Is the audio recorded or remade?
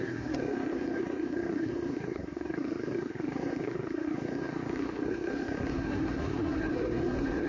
remade